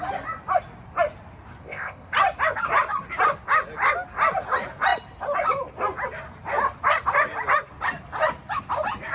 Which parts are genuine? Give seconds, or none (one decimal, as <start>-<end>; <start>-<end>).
0.0-1.6; 2.1-9.1